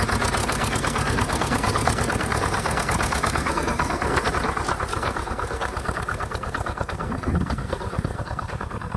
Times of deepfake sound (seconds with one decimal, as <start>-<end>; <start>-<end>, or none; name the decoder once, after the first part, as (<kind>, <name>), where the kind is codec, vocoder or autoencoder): 0.4-4.3 (codec, SNAC); 4.9-9.0